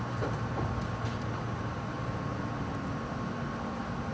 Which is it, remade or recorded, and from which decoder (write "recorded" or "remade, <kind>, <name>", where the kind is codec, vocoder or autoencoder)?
remade, vocoder, BigVGAN v2